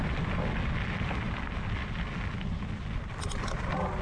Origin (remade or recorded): recorded